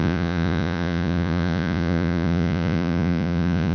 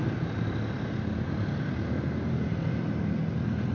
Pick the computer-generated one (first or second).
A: first